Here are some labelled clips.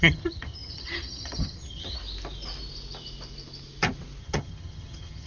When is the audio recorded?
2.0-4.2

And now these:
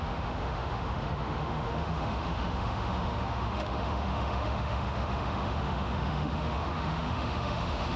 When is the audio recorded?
none

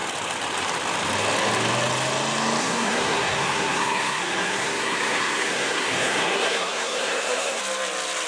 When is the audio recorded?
0.0-2.6; 7.6-8.3

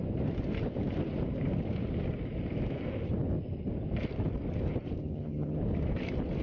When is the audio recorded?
0.0-5.0; 5.6-6.4